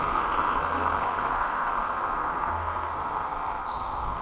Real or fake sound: fake